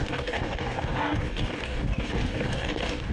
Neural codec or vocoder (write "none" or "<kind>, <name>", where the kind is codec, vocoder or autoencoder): codec, DAC